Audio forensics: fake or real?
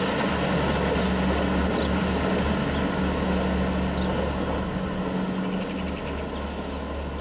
real